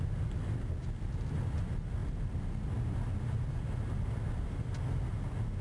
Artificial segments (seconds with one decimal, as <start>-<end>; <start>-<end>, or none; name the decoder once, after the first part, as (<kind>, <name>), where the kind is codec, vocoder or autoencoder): none